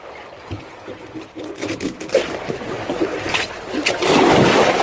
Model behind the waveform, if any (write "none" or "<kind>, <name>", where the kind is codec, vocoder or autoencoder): none